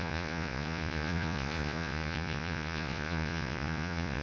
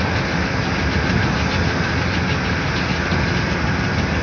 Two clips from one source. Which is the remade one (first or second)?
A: first